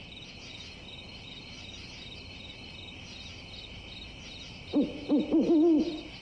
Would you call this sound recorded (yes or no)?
yes